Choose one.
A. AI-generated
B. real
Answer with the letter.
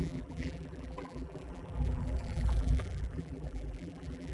A